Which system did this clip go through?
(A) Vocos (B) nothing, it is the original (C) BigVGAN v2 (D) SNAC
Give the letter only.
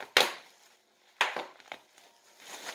B